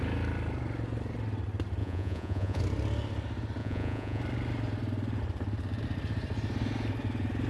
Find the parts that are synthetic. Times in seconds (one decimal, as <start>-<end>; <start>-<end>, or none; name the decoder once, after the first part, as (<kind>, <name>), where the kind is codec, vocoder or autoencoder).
1.8-2.6 (vocoder, Vocos); 3.6-4.2